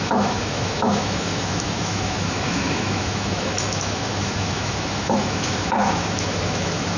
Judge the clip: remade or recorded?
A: remade